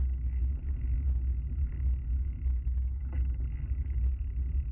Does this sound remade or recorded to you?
recorded